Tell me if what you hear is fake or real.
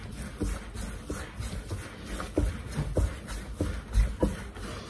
real